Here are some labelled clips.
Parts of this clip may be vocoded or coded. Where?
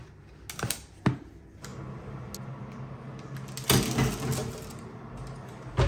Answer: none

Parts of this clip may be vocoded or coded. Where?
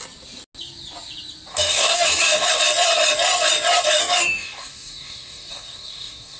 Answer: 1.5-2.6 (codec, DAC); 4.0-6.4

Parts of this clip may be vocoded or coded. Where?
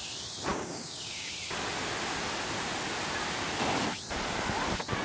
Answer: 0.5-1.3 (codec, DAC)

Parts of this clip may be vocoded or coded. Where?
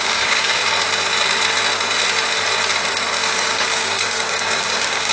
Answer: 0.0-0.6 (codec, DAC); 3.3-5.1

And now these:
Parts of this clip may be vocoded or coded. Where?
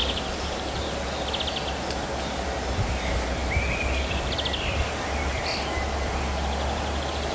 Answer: none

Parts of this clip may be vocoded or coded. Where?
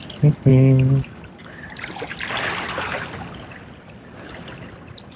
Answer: 0.5-1.2 (codec, DAC)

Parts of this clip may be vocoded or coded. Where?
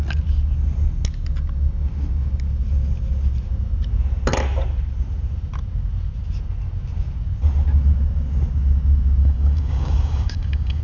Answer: 9.2-10.8 (codec, DAC)